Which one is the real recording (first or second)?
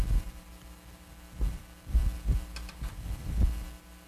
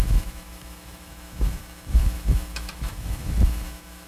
first